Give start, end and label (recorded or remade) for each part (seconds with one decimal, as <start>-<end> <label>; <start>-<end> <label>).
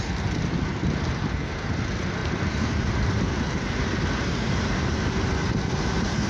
0.0-2.2 recorded; 2.2-2.9 remade; 2.9-6.3 recorded